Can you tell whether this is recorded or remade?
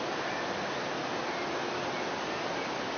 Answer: recorded